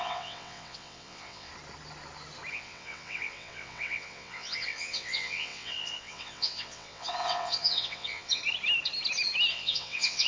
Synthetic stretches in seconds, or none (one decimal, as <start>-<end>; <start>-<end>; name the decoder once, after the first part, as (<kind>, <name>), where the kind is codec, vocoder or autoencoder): 0.0-1.5 (vocoder, WaveNeXt); 2.5-8.4; 9.5-10.3